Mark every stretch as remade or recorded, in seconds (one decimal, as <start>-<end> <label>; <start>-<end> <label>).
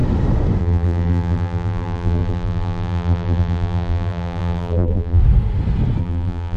0.0-0.6 recorded; 0.6-5.2 remade; 5.2-6.0 recorded; 6.0-6.6 remade